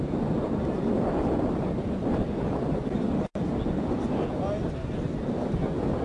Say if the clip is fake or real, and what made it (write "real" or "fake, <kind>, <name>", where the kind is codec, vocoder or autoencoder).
real